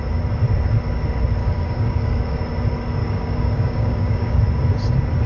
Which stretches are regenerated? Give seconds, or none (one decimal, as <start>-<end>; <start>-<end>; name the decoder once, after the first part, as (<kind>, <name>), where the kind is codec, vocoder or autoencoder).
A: 1.4-2.4 (codec, DAC); 3.0-4.4